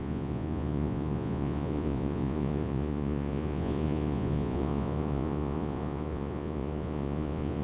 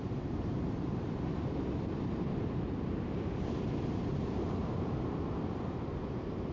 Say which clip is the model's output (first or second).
first